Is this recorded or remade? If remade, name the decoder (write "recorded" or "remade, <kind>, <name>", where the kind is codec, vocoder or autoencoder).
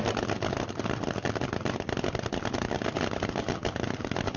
recorded